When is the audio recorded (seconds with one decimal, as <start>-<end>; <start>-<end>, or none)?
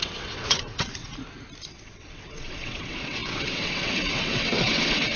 1.1-1.7